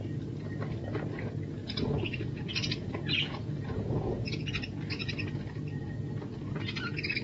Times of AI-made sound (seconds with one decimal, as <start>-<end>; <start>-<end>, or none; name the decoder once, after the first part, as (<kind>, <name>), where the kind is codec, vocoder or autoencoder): 1.6-2.4 (vocoder, Vocos); 2.8-4.4